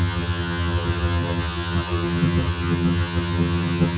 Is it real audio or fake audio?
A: fake